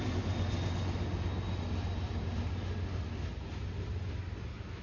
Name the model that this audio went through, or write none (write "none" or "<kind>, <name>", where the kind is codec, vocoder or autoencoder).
none